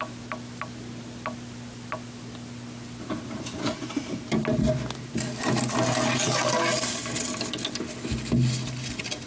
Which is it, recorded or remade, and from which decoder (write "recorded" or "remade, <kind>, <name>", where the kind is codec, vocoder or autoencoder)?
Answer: recorded